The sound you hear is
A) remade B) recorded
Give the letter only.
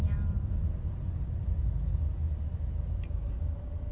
B